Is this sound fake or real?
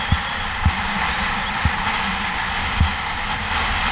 real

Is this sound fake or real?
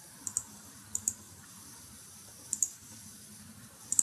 fake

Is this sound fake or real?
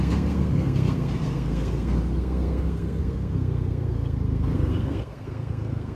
fake